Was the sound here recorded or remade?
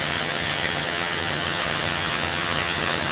remade